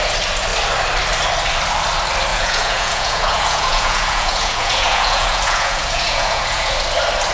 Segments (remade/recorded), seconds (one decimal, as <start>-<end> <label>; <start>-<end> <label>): 0.0-2.3 recorded; 2.3-6.7 remade; 6.7-7.3 recorded